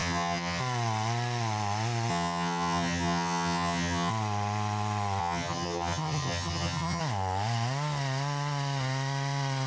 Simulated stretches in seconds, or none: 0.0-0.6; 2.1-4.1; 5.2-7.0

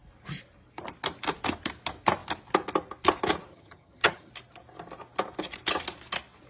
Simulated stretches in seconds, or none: 3.5-4.3

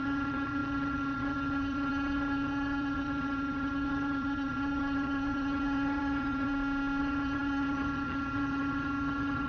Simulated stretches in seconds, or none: 0.0-6.5; 7.0-9.5

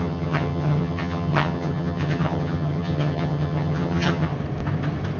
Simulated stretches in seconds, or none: 0.0-4.3

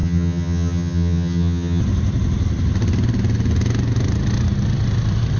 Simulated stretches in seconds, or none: 0.0-1.8

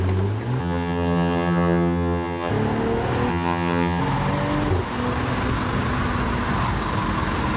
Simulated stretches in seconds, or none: 0.6-2.5; 3.3-4.0